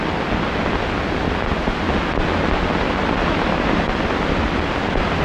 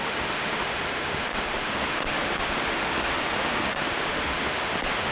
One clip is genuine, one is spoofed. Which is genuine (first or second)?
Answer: first